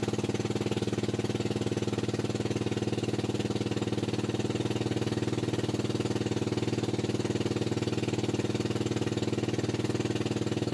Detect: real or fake real